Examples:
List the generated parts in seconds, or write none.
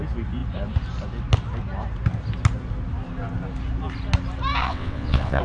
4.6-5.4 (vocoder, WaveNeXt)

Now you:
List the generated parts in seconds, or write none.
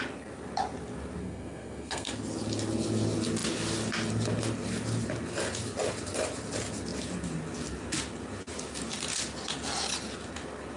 1.2-2.1 (codec, SNAC)